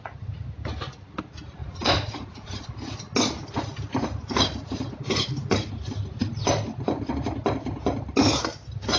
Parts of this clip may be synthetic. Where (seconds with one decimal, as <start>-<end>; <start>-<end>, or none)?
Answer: 1.6-2.7